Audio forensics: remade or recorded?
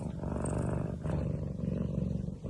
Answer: remade